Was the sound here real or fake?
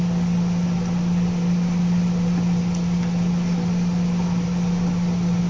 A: real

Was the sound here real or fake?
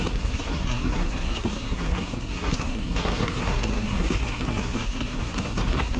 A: fake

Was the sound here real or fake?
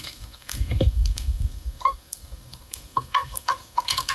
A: fake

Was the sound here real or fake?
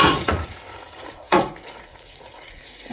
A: fake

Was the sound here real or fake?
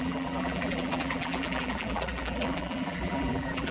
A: fake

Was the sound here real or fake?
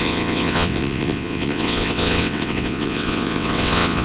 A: fake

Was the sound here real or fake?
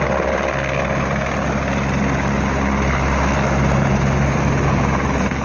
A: real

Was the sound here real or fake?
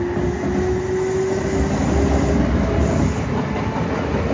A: real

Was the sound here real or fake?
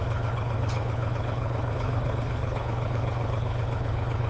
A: fake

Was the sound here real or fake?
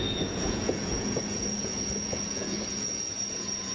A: fake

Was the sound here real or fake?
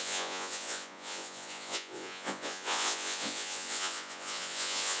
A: fake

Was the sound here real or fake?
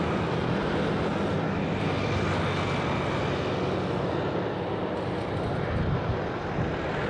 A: real